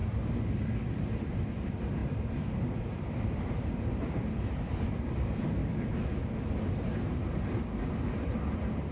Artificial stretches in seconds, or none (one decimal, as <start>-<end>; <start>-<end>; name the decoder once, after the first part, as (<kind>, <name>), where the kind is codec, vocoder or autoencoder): 1.3-5.6 (vocoder, BigVGAN v2); 6.6-8.9